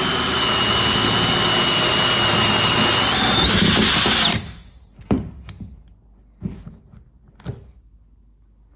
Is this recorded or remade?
recorded